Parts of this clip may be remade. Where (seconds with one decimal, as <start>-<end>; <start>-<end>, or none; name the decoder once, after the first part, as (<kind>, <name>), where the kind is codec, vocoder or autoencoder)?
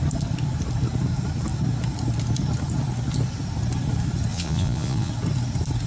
4.3-5.1 (vocoder, Vocos)